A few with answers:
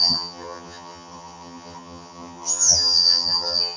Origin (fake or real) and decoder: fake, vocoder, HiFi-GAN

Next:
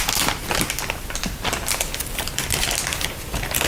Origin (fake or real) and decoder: real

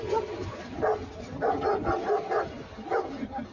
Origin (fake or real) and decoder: real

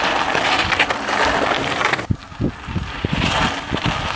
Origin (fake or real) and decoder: real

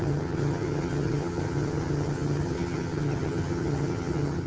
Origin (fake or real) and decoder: fake, vocoder, HiFi-GAN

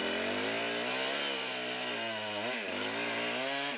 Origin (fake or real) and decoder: real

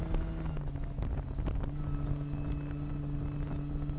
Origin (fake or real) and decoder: real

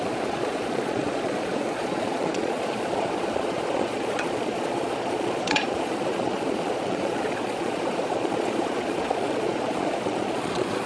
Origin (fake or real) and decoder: fake, vocoder, Vocos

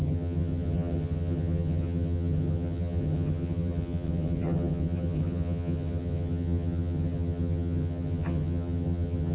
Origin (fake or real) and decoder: fake, vocoder, HiFi-GAN